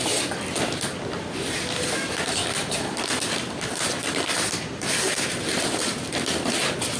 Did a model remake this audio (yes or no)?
no